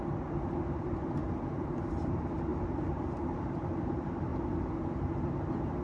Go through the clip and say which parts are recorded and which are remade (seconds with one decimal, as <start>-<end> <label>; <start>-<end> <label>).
0.0-4.3 remade; 4.3-4.9 recorded; 4.9-5.8 remade